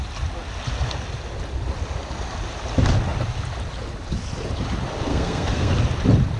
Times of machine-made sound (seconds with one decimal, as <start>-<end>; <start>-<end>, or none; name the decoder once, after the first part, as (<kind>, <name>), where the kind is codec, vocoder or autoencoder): 5.1-5.7 (codec, SNAC)